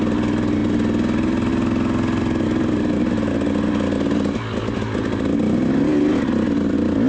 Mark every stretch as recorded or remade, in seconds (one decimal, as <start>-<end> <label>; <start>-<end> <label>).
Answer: 0.0-7.1 recorded